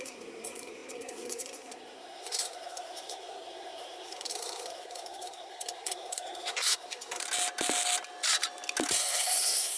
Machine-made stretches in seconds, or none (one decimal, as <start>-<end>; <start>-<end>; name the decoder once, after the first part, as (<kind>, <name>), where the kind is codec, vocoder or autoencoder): 0.0-7.2 (codec, SNAC); 8.9-9.8